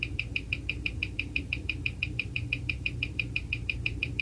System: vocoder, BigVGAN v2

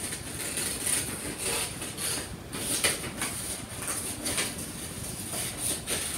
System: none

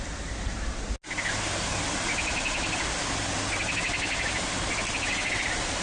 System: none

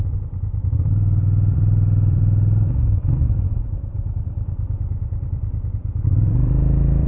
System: vocoder, BigVGAN v2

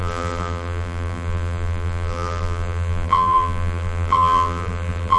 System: vocoder, BigVGAN v2